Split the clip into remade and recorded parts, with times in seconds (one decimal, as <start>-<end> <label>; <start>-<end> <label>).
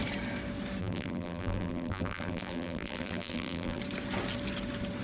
0.0-0.8 recorded; 0.8-3.8 remade; 3.8-5.0 recorded